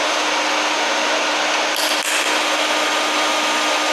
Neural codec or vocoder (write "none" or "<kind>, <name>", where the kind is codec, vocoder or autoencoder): none